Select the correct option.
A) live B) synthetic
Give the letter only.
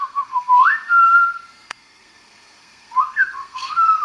B